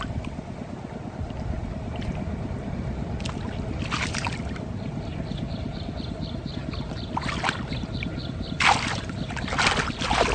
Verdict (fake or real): real